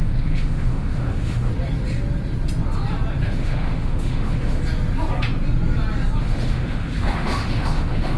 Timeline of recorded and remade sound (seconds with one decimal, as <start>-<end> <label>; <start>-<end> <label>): 0.0-1.5 remade; 1.5-3.2 recorded; 3.2-4.6 remade; 4.6-6.2 recorded; 6.2-8.2 remade